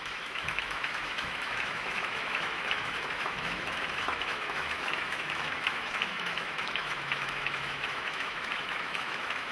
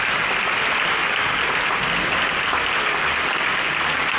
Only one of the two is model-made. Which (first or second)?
first